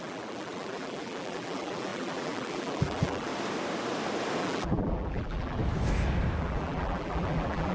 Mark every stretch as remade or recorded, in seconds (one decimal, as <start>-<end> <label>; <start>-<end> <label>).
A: 0.0-3.3 remade; 3.3-4.4 recorded; 4.4-5.6 remade; 5.6-6.4 recorded; 6.4-7.7 remade